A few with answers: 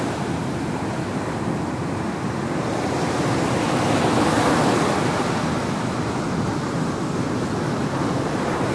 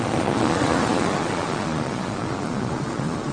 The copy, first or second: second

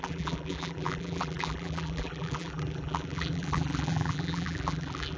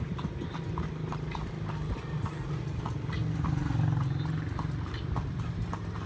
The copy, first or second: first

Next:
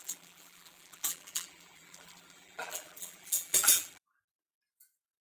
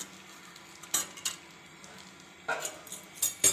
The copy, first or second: first